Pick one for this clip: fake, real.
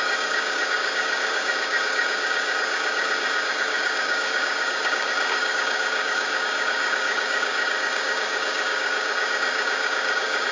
fake